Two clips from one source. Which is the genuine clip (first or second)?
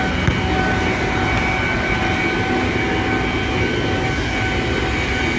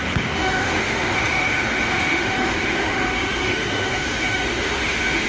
first